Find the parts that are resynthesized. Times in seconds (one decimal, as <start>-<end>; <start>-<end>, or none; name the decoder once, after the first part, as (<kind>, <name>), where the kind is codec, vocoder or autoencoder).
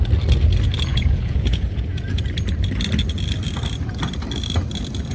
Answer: 0.9-2.2 (vocoder, Vocos)